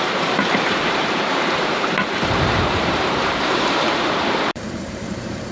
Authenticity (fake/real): fake